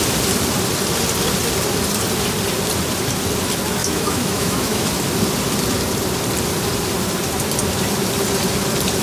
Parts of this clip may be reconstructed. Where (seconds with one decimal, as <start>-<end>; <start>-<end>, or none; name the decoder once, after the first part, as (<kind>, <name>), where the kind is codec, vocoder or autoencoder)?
3.8-5.0 (autoencoder, DAC-VAE)